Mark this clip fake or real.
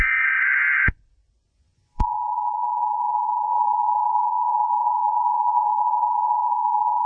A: fake